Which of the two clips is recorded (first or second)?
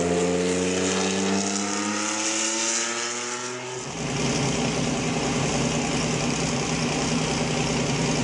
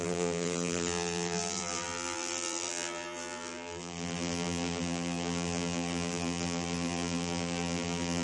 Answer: first